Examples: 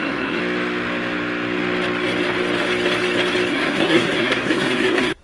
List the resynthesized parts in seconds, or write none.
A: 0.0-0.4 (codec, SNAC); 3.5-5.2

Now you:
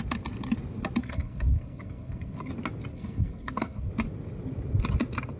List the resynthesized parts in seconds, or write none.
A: 1.0-2.5 (codec, SNAC); 2.9-3.9

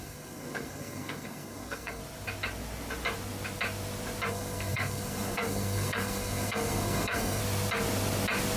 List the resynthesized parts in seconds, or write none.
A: 0.0-2.0 (codec, SNAC); 4.3-7.4

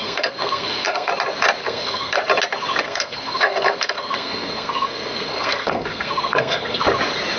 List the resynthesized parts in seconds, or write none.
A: 0.0-1.1 (codec, SNAC); 1.6-2.2; 2.8-6.8

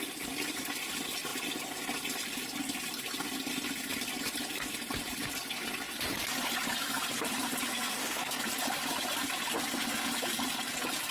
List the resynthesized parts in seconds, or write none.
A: 7.7-8.4 (codec, SNAC)

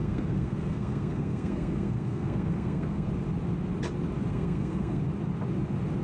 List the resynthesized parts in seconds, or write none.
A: 0.0-3.1 (codec, SNAC); 4.3-5.0

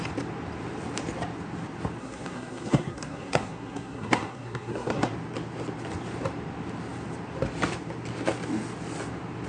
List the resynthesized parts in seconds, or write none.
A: 2.0-5.1 (codec, SNAC)